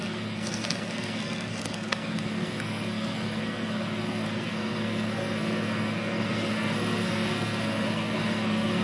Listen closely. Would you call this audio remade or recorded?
remade